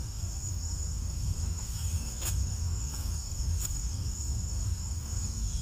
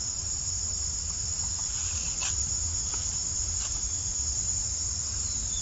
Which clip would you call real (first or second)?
second